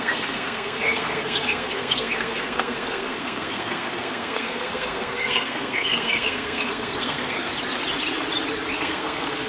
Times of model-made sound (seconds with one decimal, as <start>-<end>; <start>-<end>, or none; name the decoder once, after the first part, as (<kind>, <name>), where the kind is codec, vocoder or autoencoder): 0.0-7.5 (codec, SNAC); 8.8-9.5